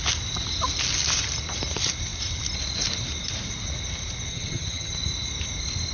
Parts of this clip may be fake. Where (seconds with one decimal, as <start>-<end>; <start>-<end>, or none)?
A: 4.3-4.9

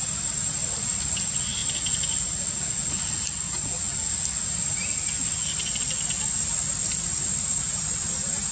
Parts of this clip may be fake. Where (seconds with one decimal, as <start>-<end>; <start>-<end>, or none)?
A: none